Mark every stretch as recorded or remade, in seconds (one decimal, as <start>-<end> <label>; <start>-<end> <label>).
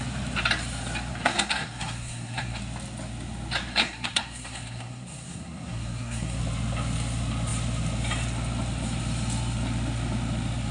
0.0-1.1 recorded; 1.1-2.6 remade; 2.6-3.7 recorded; 3.7-6.4 remade; 6.4-10.7 recorded